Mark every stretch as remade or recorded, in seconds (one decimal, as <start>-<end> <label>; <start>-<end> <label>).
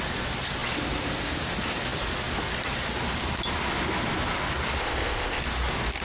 0.0-4.8 recorded; 4.8-5.4 remade; 5.4-6.0 recorded